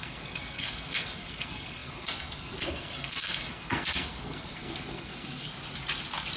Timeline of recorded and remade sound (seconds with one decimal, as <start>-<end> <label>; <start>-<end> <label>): 0.0-5.5 remade; 5.5-6.4 recorded